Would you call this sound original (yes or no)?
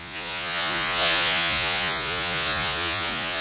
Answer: no